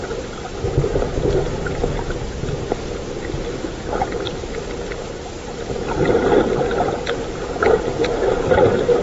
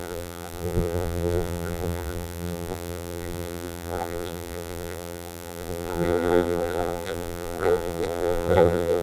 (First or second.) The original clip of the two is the first